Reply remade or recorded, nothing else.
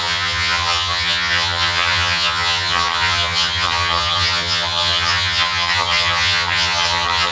remade